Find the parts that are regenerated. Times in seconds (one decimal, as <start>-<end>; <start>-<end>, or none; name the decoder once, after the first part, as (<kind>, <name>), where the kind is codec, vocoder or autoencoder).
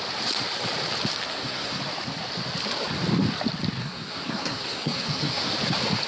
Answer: 1.3-1.8 (codec, SNAC); 3.8-5.5